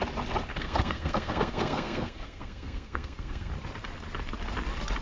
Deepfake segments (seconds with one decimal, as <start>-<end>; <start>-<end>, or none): 0.5-3.5